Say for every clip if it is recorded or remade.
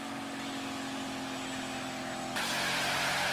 recorded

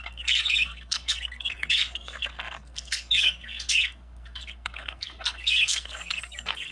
remade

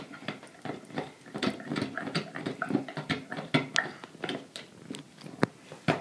recorded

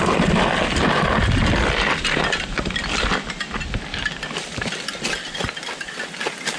recorded